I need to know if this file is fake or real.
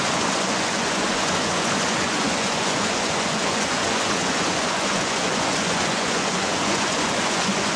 fake